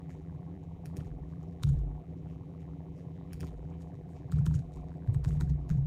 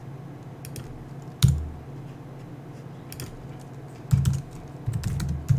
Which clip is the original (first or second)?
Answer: second